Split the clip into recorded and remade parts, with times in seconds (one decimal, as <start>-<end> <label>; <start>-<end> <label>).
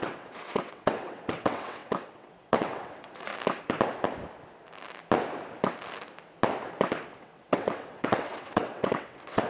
0.0-3.3 remade; 3.3-7.2 recorded; 7.2-9.5 remade